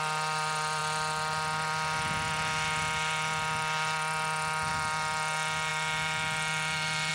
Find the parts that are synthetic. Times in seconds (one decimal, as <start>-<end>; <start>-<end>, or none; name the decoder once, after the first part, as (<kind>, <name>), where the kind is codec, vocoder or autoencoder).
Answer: none